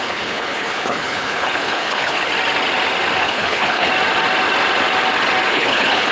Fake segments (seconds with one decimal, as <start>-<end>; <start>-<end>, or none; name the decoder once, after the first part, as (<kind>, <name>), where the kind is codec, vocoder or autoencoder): 0.0-2.3 (codec, HILCodec); 3.2-3.9; 5.5-6.1